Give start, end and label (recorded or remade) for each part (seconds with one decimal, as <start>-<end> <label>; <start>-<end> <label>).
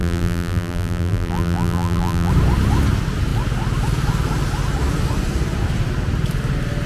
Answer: 0.0-2.3 remade; 2.3-6.9 recorded